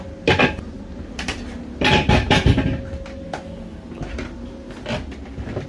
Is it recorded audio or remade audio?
recorded